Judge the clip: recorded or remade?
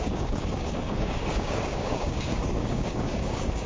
remade